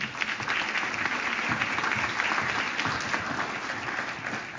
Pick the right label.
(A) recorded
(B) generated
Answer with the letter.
A